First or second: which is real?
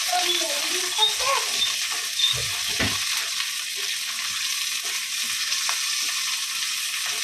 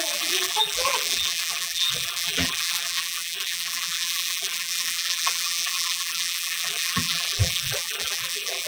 first